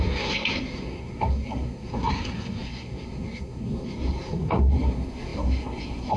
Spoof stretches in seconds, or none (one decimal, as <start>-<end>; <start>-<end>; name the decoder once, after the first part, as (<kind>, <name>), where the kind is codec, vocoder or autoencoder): 0.0-6.2 (codec, SNAC)